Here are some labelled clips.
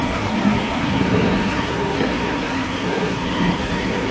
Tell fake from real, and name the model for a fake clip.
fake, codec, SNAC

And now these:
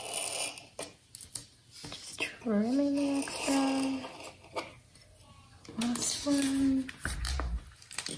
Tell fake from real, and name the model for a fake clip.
real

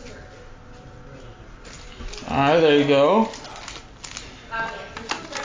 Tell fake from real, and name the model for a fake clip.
real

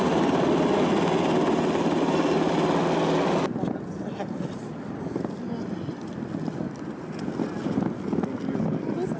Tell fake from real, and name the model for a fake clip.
real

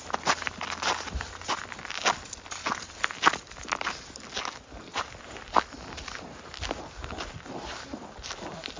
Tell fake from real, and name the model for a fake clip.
real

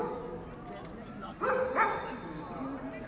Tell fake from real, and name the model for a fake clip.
real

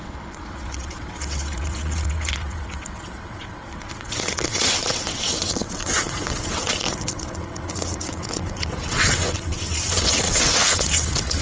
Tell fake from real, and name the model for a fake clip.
fake, vocoder, WaveNeXt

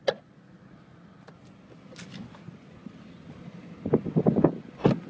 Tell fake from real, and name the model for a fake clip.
real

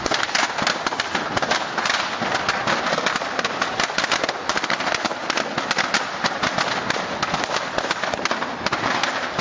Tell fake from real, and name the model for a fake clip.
real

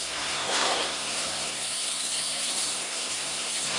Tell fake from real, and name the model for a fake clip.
fake, codec, SNAC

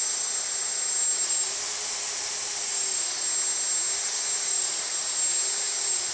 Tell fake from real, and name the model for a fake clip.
real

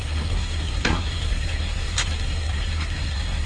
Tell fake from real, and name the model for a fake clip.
fake, codec, SNAC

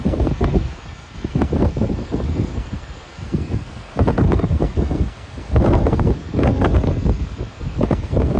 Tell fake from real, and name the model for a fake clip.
fake, codec, SNAC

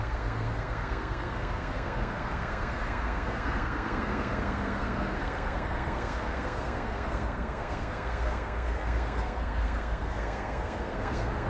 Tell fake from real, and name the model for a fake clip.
fake, codec, SNAC